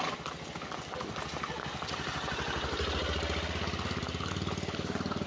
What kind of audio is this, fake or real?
real